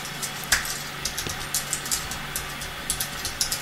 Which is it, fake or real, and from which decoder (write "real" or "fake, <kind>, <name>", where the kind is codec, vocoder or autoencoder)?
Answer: real